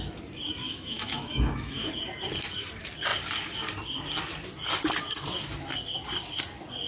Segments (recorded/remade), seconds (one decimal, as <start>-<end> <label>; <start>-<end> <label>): 0.0-0.6 recorded; 0.6-1.9 remade; 1.9-6.9 recorded